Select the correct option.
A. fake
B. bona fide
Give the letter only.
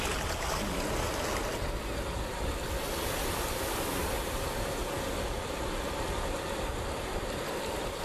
B